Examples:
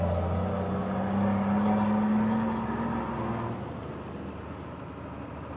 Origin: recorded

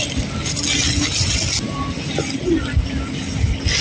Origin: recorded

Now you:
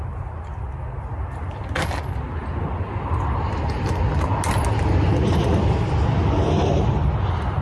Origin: recorded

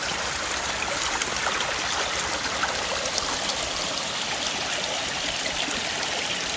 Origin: recorded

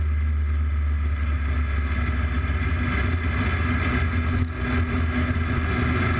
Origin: recorded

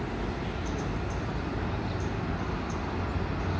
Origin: recorded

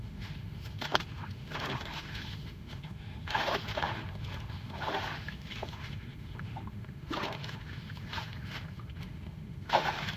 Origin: remade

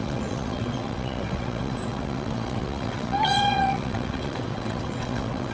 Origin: remade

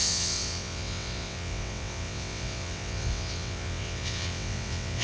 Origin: remade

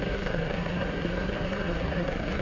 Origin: remade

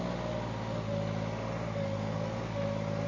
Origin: recorded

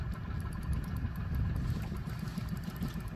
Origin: recorded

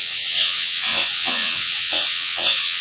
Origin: remade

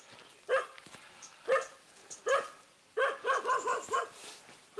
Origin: recorded